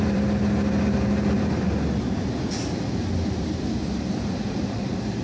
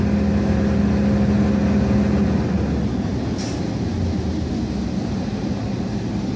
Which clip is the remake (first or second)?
first